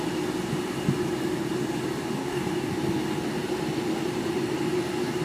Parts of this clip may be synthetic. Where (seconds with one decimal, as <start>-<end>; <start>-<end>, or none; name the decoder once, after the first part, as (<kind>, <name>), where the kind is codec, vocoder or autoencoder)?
2.2-2.7 (codec, DAC)